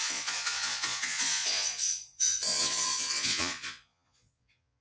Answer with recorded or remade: remade